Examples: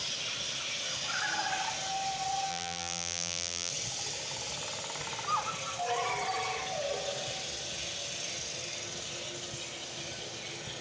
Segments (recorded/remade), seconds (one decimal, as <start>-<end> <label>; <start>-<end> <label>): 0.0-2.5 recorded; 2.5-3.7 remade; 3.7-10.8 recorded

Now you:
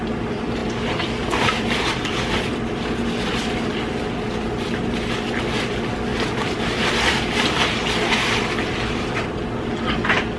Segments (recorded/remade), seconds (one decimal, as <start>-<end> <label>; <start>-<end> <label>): 0.0-6.1 recorded; 6.1-7.6 remade; 7.6-10.4 recorded

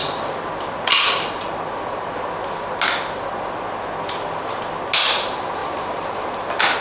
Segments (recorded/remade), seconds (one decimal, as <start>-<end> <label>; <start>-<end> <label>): 0.0-5.6 recorded; 5.6-6.3 remade; 6.3-6.8 recorded

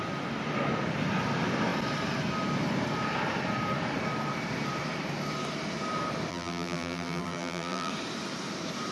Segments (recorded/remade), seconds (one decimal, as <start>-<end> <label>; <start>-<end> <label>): 0.0-6.3 recorded; 6.3-7.9 remade; 7.9-8.9 recorded